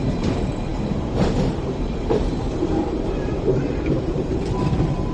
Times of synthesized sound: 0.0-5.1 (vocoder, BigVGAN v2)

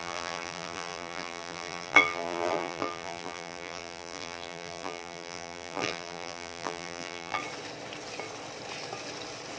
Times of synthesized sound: 0.0-7.4 (vocoder, BigVGAN v2)

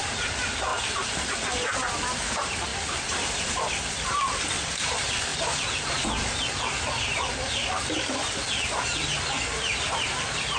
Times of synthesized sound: 0.0-5.3 (vocoder, BigVGAN v2)

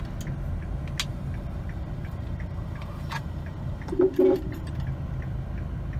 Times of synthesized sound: 1.1-4.7 (vocoder, BigVGAN v2)

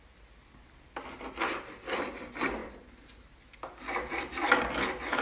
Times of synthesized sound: 2.6-3.4 (vocoder, BigVGAN v2)

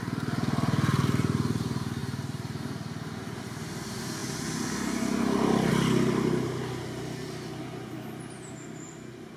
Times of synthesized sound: none